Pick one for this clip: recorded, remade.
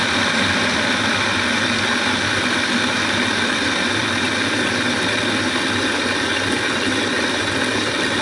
recorded